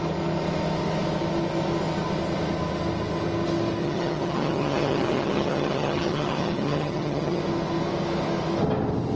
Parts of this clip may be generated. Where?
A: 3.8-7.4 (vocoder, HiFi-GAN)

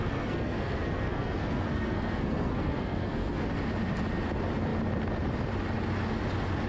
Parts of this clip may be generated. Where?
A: 0.0-3.5 (codec, SNAC)